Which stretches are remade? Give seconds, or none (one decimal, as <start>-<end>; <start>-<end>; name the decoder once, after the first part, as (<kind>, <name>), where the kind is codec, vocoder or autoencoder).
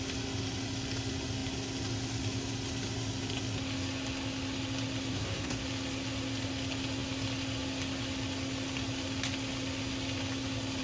5.1-5.6 (codec, SNAC)